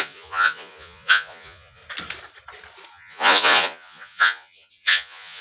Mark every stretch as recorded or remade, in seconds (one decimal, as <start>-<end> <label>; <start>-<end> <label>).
0.0-1.8 remade; 1.8-2.9 recorded; 2.9-5.4 remade